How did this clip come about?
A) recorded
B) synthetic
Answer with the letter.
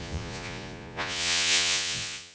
B